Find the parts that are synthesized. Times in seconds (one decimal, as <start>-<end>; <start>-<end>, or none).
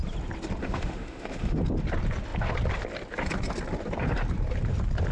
0.6-1.6